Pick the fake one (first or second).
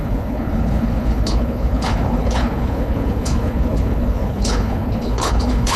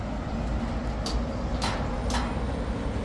first